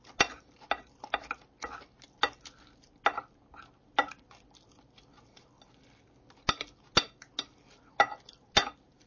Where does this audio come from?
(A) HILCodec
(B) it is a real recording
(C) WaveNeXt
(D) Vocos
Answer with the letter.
B